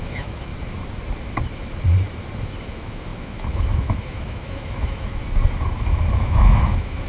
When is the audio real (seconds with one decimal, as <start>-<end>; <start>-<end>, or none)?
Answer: 0.5-2.6; 5.2-6.1